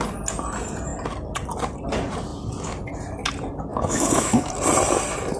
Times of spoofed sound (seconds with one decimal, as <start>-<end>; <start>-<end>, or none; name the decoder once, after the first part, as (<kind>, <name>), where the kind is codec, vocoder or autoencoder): 3.7-4.5 (autoencoder, DAC-VAE)